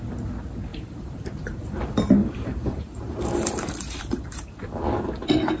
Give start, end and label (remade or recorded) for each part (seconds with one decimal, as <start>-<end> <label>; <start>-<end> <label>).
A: 0.0-0.7 recorded; 0.7-1.8 remade; 1.8-2.2 recorded; 2.2-4.5 remade; 4.5-5.6 recorded